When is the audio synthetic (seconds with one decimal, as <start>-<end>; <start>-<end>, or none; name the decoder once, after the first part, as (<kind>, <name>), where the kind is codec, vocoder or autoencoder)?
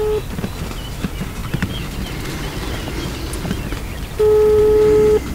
none